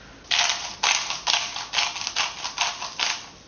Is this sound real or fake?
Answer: real